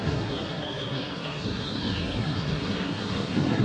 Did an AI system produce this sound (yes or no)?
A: yes